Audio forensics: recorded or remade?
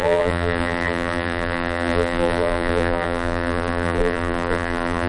remade